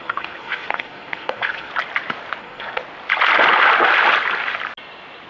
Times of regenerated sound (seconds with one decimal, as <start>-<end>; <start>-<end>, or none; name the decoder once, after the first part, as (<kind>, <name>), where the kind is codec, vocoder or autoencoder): 0.0-1.7 (codec, SNAC); 2.4-2.8